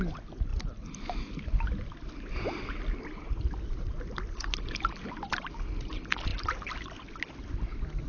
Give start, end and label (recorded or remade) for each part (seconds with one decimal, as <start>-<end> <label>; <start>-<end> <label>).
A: 0.0-8.1 recorded

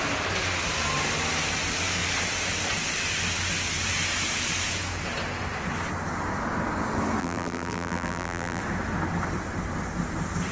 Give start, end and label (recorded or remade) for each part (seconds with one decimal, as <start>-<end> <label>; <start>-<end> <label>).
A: 0.0-7.2 recorded; 7.2-8.6 remade; 8.6-10.5 recorded